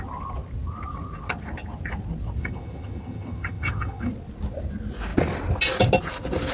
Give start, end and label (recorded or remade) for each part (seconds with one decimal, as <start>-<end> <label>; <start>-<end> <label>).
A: 0.0-2.4 recorded; 2.4-4.1 remade; 4.1-6.5 recorded